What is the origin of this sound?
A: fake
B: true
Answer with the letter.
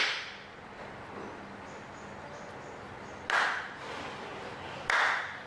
B